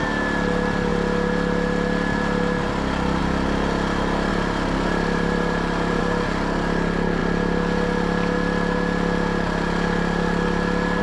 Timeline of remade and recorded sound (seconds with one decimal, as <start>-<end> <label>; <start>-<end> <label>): 0.0-4.3 recorded; 4.3-6.0 remade; 6.0-11.0 recorded